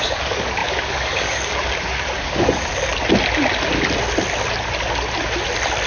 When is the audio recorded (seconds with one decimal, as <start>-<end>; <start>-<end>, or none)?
2.9-5.9